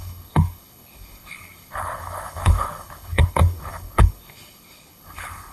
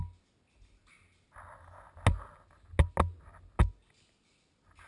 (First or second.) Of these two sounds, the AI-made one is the first